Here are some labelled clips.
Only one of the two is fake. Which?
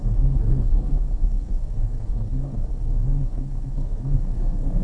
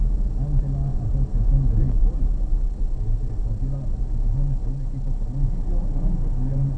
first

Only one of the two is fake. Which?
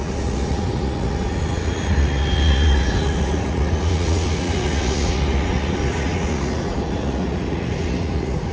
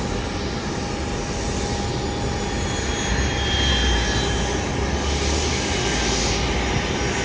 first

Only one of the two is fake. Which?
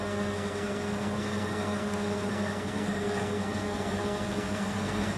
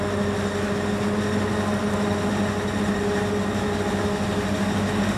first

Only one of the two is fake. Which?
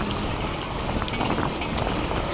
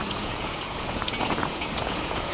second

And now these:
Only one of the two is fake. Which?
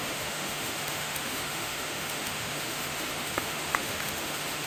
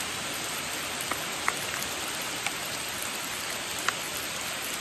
first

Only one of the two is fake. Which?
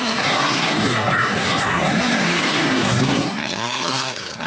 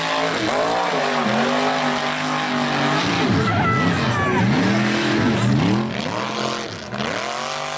first